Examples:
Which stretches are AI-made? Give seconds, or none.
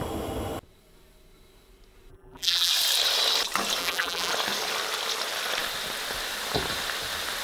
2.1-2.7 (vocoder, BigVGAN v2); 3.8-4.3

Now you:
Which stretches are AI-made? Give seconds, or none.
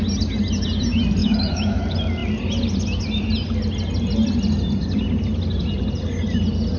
1.2-1.8 (autoencoder, DAC-VAE)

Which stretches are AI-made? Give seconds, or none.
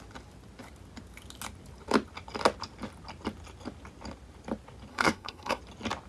4.9-5.6 (codec, SNAC)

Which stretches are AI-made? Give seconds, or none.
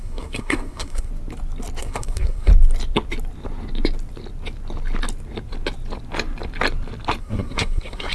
0.0-1.1 (codec, SNAC); 1.8-2.5; 7.2-8.1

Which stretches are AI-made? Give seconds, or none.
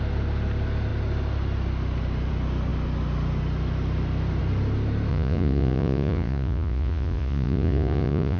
5.1-8.4 (vocoder, Vocos)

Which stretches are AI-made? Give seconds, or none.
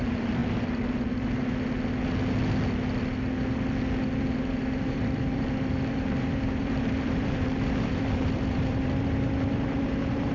0.0-0.4 (vocoder, BigVGAN v2); 4.2-10.3